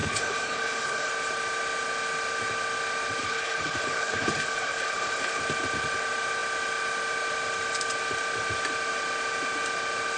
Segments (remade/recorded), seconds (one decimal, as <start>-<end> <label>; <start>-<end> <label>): 0.0-1.1 remade; 1.1-3.2 recorded; 3.2-5.4 remade; 5.4-10.2 recorded